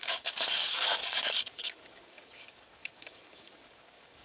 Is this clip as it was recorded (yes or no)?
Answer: no